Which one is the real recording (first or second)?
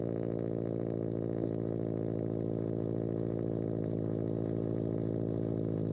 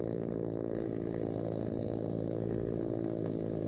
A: first